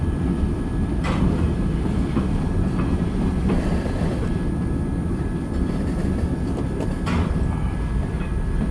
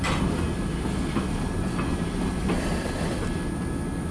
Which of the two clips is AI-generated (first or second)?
first